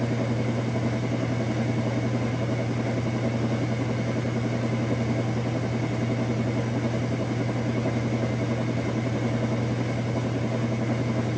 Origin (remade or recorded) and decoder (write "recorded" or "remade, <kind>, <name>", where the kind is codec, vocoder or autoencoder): recorded